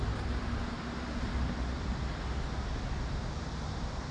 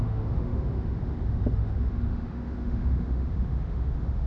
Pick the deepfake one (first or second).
second